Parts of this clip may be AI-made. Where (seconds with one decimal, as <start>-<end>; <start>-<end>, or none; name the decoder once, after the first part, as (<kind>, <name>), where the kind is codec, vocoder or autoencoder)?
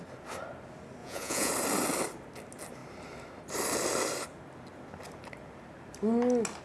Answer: 1.0-1.5 (vocoder, Vocos)